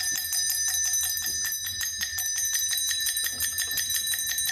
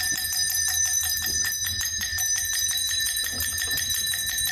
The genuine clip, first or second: first